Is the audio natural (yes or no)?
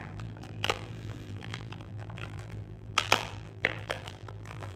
no